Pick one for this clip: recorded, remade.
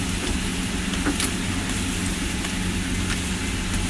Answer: recorded